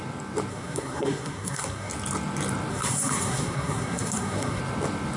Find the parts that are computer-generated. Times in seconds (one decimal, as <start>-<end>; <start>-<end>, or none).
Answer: 0.5-1.9; 2.7-4.6